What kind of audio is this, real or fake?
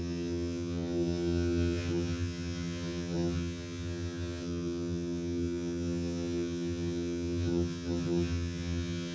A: fake